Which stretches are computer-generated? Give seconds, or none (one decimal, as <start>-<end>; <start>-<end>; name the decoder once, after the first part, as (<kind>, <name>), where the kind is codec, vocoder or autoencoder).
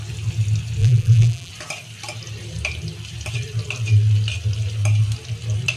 0.8-1.5 (vocoder, BigVGAN v2)